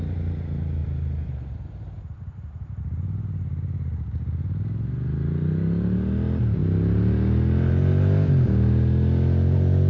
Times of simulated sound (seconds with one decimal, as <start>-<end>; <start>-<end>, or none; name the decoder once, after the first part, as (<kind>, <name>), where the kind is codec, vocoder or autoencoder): 0.8-1.8 (vocoder, BigVGAN v2)